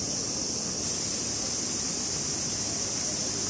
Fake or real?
real